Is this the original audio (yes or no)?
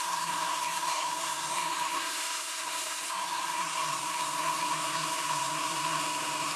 no